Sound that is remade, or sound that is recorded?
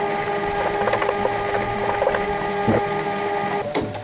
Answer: recorded